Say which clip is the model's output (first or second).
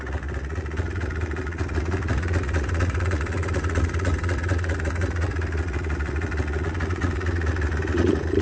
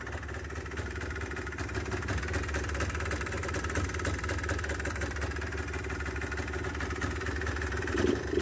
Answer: first